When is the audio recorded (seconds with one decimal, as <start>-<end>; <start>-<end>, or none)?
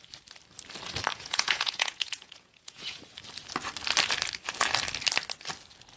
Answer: 0.0-1.1; 3.0-6.0